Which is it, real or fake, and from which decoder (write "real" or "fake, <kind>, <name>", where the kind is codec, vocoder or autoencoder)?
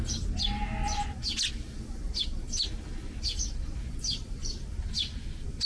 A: real